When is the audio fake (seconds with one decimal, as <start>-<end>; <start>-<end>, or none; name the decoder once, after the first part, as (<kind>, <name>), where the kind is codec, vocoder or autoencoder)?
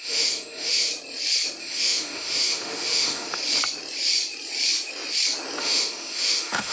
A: 0.0-0.9 (autoencoder, DAC-VAE); 1.6-3.4; 5.6-6.7